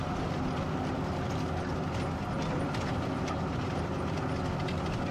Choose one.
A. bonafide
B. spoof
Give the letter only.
A